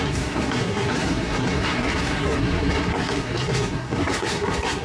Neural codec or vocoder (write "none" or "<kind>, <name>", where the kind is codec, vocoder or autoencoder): codec, SNAC